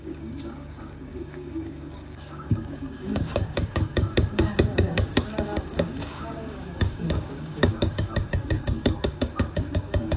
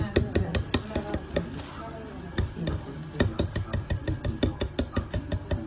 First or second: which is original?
second